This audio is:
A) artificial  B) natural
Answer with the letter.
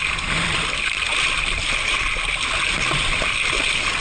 B